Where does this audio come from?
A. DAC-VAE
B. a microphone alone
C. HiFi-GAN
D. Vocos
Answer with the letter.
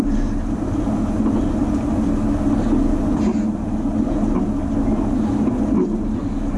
B